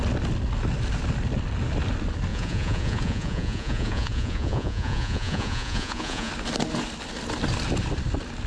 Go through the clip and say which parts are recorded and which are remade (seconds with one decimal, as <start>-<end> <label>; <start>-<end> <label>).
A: 0.0-2.3 recorded; 2.3-6.3 remade; 6.3-8.5 recorded